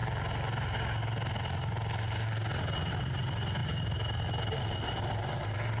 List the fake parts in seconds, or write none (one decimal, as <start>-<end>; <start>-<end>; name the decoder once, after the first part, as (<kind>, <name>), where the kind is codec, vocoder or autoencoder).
2.9-5.8 (vocoder, BigVGAN v2)